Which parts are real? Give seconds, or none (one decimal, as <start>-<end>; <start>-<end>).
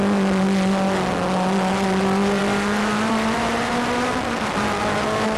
0.0-5.4